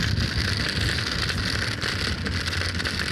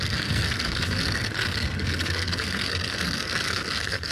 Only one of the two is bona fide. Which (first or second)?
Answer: first